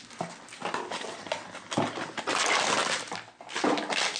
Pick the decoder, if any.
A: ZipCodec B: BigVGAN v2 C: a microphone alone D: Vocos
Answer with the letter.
C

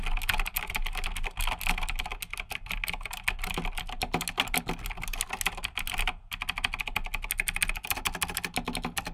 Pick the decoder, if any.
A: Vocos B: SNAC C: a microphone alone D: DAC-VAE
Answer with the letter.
C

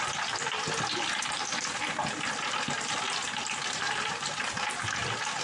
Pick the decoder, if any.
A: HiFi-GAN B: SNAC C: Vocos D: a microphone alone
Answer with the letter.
D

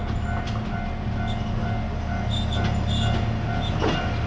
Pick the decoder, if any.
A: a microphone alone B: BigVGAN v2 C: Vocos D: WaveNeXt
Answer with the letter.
A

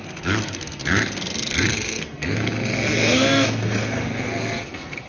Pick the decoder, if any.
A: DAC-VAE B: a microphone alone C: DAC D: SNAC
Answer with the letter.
D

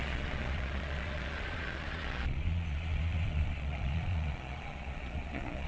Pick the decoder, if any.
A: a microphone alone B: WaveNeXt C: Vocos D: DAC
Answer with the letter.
C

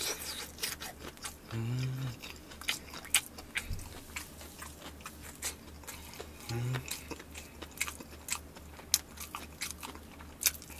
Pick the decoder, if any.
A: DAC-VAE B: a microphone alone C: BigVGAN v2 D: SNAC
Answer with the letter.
B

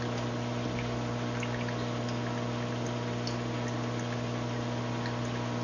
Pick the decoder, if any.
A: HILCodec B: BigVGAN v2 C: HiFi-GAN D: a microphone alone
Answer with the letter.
D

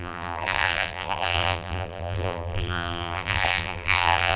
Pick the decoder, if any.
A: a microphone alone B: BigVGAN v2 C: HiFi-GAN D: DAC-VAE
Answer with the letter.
B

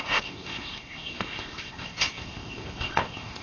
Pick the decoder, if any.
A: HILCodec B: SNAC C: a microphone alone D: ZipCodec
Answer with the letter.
D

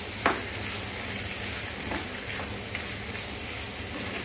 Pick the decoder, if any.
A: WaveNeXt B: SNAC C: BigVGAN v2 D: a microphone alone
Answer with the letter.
D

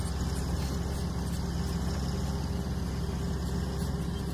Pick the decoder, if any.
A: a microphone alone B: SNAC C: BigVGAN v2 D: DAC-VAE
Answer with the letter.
A